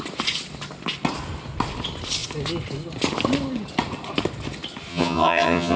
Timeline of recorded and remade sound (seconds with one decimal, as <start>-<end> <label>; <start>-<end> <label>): 0.0-4.9 recorded; 4.9-5.8 remade